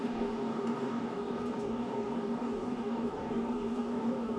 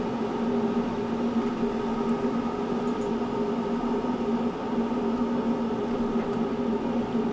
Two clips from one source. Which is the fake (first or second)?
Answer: first